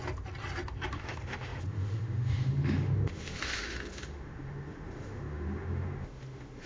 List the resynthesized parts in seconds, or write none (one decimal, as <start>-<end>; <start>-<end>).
0.9-6.7